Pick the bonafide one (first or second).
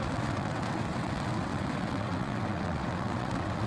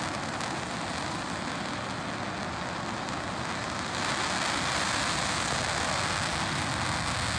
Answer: second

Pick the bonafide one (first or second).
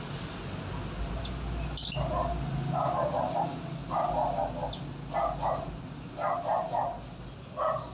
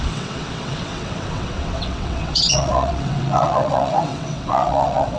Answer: first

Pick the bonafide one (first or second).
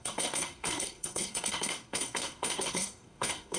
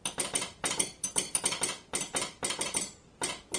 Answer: second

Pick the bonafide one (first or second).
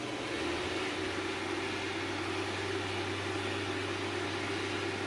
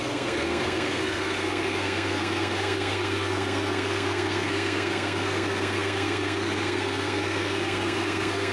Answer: first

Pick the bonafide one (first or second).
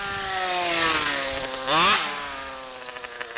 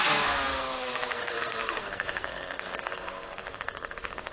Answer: first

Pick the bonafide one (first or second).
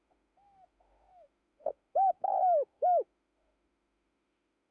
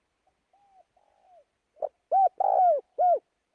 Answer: second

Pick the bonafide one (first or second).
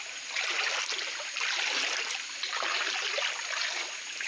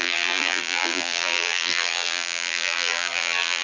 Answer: first